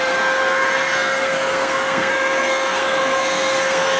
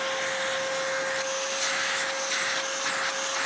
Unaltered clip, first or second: second